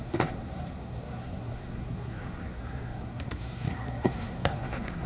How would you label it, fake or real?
fake